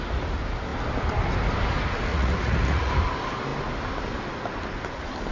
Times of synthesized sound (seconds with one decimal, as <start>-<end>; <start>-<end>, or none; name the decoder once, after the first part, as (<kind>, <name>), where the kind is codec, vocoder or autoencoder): 2.1-2.9 (vocoder, Vocos)